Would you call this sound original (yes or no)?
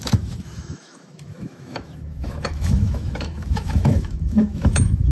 no